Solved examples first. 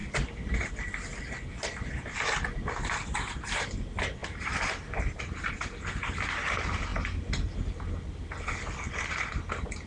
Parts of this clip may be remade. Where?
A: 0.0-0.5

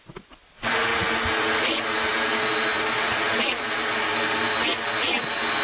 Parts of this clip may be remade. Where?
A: none

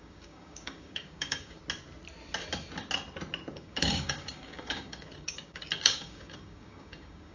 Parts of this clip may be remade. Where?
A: 0.0-1.6; 3.5-7.3

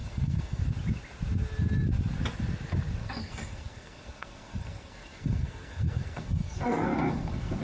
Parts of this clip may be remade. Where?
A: 0.0-0.6; 3.0-7.6

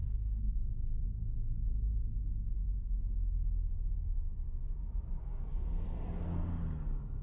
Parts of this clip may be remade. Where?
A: 0.0-0.6; 5.2-6.5